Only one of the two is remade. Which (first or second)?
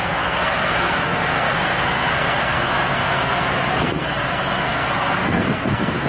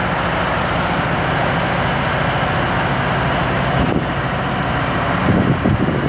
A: first